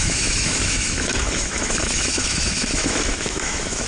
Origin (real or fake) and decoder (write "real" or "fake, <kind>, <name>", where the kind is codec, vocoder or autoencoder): fake, autoencoder, DAC-VAE